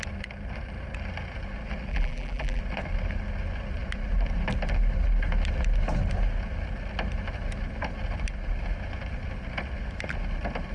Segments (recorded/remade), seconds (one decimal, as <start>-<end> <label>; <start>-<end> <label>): 0.0-1.9 recorded; 1.9-2.6 remade; 2.6-10.7 recorded